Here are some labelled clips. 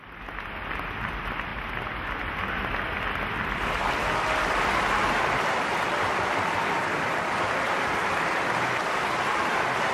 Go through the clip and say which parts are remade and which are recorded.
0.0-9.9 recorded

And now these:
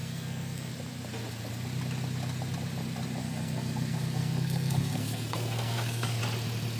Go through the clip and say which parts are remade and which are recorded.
0.0-0.7 remade; 0.7-3.2 recorded; 3.2-6.2 remade; 6.2-6.8 recorded

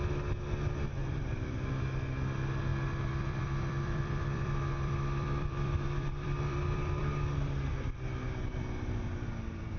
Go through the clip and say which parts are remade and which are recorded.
0.0-1.0 recorded; 1.0-1.7 remade; 1.7-2.7 recorded; 2.7-7.7 remade; 7.7-9.8 recorded

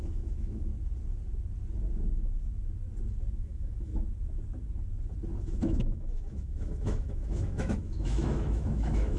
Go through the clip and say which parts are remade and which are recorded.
0.0-0.7 remade; 0.7-3.4 recorded; 3.4-3.9 remade; 3.9-5.4 recorded; 5.4-9.2 remade